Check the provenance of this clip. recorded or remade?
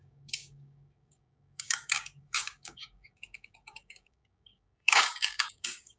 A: remade